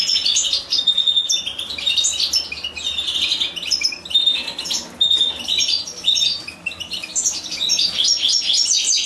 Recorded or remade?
recorded